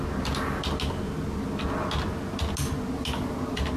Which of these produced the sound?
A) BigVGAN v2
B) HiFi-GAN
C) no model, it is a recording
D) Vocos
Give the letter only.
C